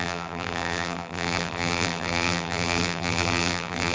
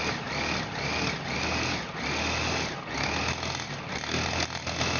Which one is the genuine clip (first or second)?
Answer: second